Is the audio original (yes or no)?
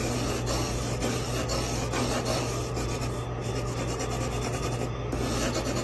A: yes